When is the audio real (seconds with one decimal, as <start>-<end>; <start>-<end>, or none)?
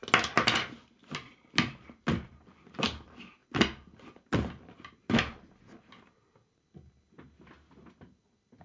0.0-8.6